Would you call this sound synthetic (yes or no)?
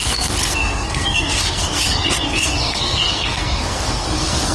yes